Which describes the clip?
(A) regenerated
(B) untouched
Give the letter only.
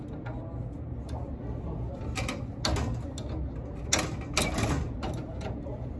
B